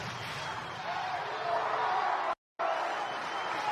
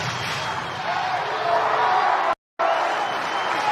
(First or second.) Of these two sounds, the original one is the second